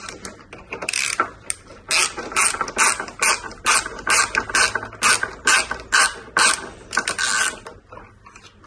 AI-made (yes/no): no